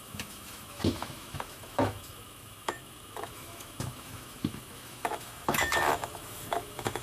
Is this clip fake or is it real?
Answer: fake